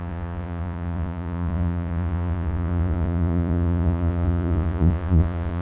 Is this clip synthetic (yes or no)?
yes